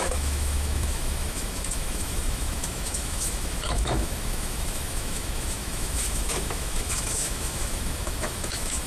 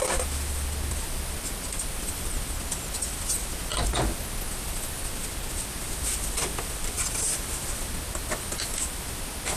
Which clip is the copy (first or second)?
first